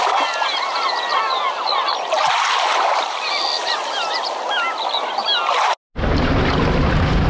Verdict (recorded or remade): recorded